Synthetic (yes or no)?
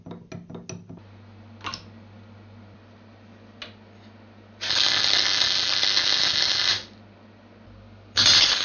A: no